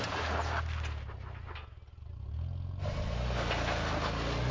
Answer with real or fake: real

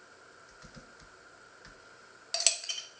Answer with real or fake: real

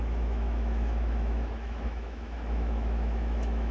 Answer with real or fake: fake